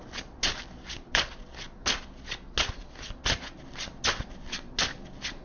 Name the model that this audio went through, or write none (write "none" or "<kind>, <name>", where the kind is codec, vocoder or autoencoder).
none